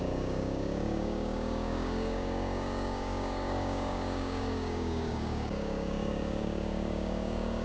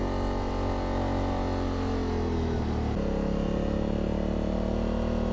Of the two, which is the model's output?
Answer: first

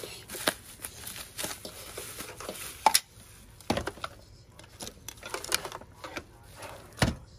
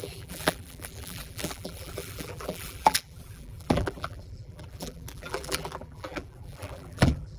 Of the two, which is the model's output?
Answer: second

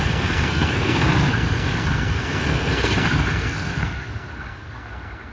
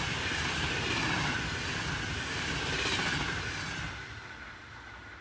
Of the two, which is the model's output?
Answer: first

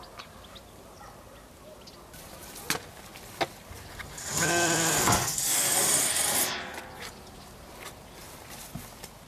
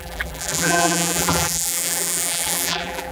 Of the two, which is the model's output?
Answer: second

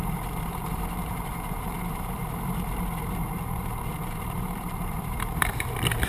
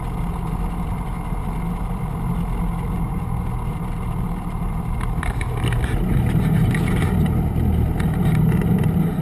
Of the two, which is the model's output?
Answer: first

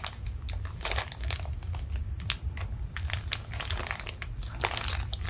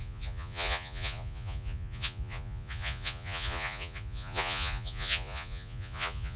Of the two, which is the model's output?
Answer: second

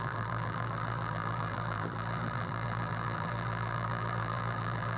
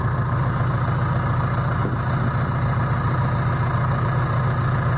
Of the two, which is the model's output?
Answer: first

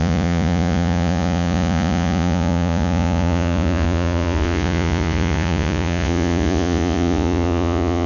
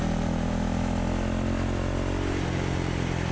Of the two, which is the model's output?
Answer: first